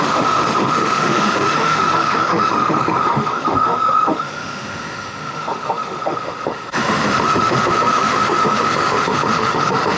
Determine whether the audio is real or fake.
fake